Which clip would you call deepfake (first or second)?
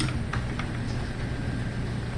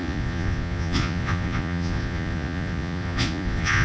second